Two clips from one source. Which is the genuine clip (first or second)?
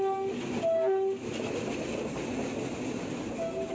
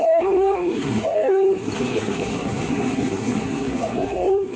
first